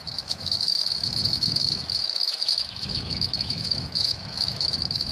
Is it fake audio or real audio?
fake